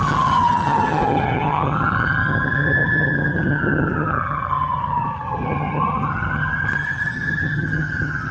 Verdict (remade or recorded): remade